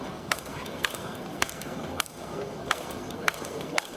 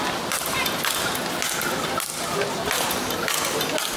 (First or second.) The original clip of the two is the second